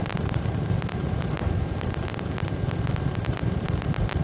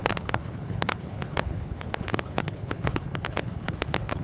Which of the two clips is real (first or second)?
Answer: first